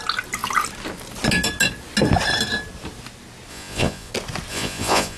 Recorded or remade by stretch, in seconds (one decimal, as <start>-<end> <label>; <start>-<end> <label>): 0.0-3.5 recorded; 3.5-4.1 remade; 4.1-4.5 recorded; 4.5-5.2 remade